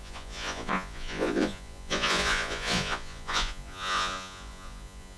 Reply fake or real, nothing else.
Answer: fake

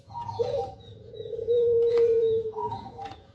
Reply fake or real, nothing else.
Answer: fake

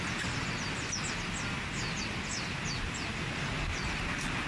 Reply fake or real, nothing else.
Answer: real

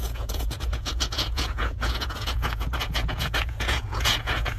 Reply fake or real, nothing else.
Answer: fake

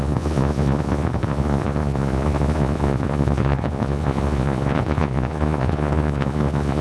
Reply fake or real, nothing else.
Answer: fake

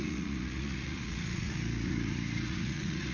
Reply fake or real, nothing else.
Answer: fake